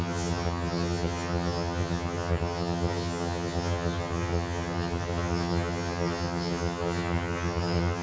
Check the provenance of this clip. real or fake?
fake